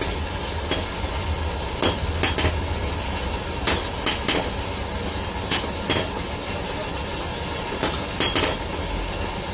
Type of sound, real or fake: real